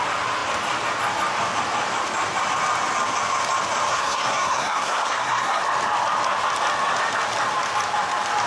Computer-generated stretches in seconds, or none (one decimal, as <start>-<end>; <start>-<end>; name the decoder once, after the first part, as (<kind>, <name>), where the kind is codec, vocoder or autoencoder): 3.9-5.6 (codec, SNAC)